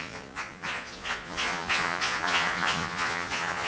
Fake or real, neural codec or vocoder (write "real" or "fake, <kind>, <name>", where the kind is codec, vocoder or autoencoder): fake, vocoder, Vocos